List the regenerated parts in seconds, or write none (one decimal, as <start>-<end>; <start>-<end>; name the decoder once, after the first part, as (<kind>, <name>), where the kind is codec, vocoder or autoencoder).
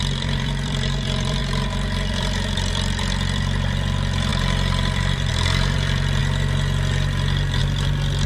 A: 0.0-6.2 (vocoder, BigVGAN v2); 7.6-8.3